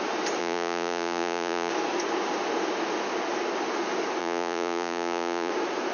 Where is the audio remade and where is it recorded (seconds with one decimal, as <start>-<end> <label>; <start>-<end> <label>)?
0.0-0.4 recorded; 0.4-1.7 remade; 1.7-4.2 recorded; 4.2-5.5 remade; 5.5-5.9 recorded